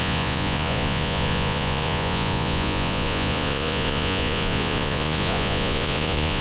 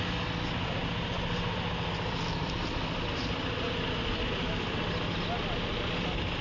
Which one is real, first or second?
second